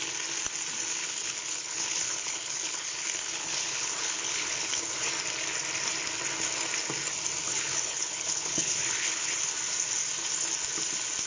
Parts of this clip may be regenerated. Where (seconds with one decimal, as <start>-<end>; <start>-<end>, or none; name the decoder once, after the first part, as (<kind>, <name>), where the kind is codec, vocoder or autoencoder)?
1.0-5.1 (codec, HILCodec); 7.4-9.5